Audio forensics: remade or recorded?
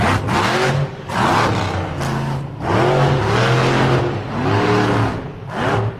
recorded